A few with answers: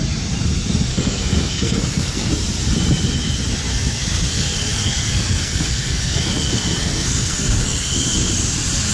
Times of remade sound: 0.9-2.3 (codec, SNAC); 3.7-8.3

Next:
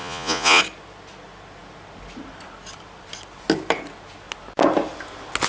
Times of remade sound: 0.0-0.6 (vocoder, Vocos)